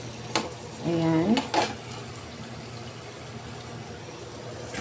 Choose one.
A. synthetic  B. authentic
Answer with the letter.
B